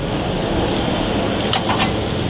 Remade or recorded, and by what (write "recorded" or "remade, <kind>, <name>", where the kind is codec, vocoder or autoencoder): recorded